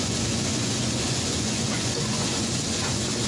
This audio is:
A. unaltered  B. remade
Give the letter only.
B